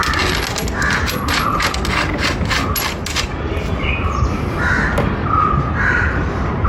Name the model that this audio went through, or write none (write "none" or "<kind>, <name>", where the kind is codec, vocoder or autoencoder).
none